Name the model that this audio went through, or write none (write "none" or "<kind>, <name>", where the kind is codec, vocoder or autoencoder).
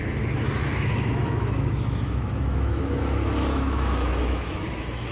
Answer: autoencoder, DAC-VAE